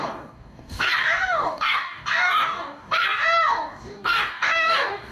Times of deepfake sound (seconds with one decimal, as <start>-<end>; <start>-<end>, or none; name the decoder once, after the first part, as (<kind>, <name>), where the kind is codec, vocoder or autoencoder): 0.0-5.1 (codec, DAC)